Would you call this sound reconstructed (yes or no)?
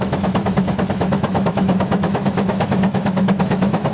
yes